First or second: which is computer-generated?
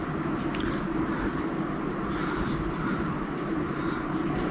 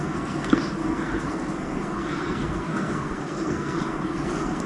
second